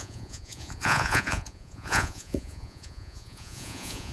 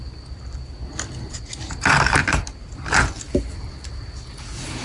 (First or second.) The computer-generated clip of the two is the first